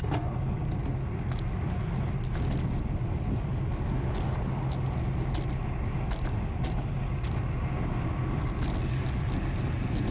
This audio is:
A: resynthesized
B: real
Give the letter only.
B